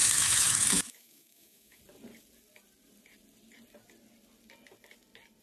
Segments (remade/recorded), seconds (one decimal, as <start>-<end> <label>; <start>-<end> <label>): 0.0-1.8 remade; 1.8-5.4 recorded